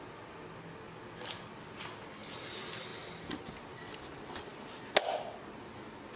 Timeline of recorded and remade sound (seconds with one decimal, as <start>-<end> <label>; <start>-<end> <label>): 0.0-6.2 recorded